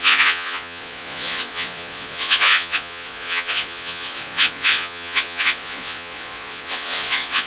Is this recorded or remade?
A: remade